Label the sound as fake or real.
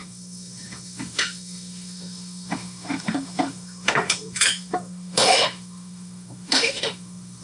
fake